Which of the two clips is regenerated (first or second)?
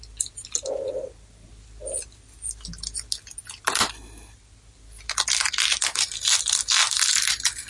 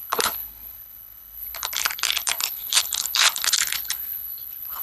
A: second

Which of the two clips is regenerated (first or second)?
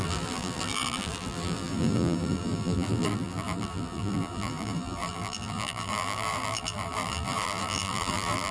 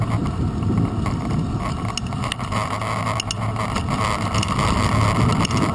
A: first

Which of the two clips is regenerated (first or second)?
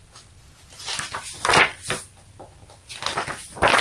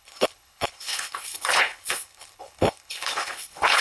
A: second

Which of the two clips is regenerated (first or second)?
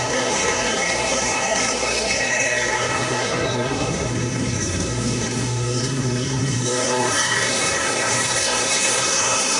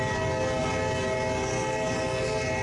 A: first